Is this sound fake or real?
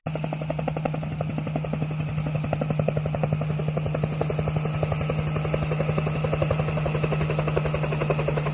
real